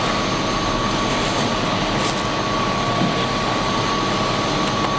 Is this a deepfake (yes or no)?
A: no